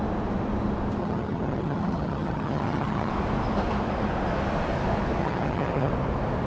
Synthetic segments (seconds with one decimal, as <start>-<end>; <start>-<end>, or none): 1.0-3.1; 5.2-5.9